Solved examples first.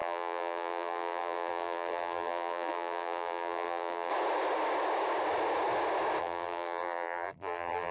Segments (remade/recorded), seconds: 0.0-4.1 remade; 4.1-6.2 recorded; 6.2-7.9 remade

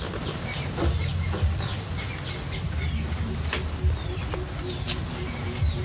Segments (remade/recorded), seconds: 0.0-0.5 recorded; 0.5-1.1 remade; 1.1-5.8 recorded

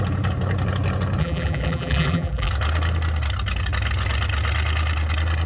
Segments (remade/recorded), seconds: 0.0-1.2 recorded; 1.2-2.5 remade; 2.5-5.5 recorded

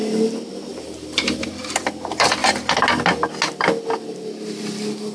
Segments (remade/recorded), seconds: 0.0-0.7 recorded; 0.7-1.6 remade; 1.6-5.1 recorded